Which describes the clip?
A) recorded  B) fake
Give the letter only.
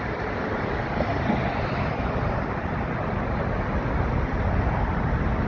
A